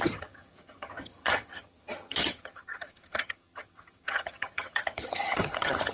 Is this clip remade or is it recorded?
remade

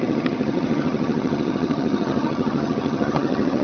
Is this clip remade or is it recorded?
remade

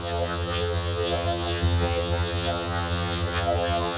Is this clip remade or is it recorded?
remade